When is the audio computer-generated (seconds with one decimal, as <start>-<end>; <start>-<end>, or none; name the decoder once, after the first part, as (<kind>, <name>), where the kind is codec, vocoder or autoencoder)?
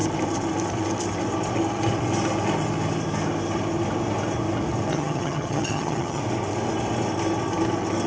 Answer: 4.9-6.2 (vocoder, HiFi-GAN)